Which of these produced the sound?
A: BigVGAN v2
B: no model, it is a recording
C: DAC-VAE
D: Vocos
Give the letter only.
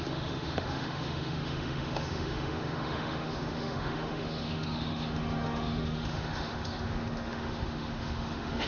C